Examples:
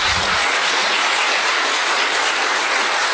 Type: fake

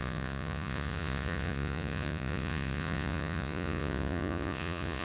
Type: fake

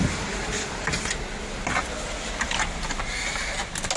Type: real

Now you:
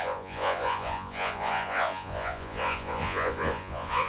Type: fake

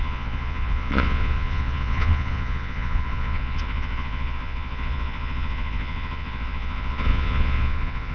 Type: fake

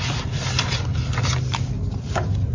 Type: real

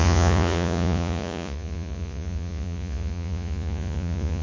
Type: fake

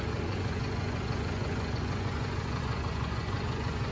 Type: fake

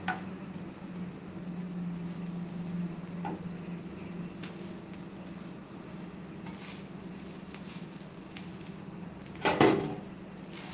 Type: real